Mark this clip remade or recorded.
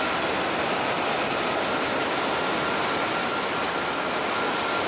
recorded